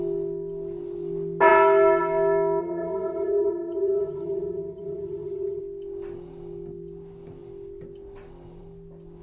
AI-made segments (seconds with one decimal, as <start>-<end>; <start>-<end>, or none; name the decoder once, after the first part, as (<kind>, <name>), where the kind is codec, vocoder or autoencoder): 2.6-5.6 (vocoder, HiFi-GAN)